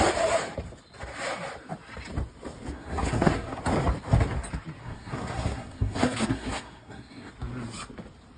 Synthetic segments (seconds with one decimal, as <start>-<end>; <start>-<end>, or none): 2.7-3.6; 4.8-7.3